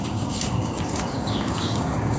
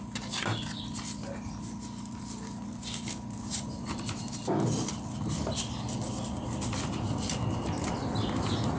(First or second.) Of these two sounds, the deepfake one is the first